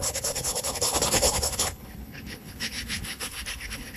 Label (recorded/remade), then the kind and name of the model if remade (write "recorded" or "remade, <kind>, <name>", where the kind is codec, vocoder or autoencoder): remade, codec, HILCodec